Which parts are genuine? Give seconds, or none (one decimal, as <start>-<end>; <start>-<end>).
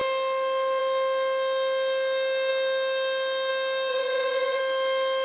0.0-3.9; 4.6-5.2